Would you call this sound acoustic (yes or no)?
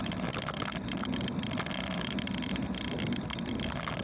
yes